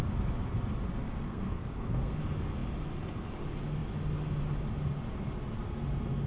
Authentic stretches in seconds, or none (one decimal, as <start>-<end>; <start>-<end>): 0.0-1.3; 2.2-6.3